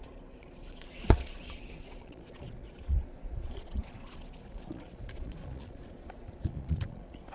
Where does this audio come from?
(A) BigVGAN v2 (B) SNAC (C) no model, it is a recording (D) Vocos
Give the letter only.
D